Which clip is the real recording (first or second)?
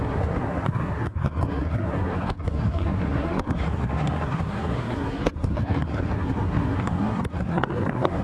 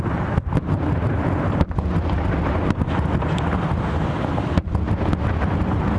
second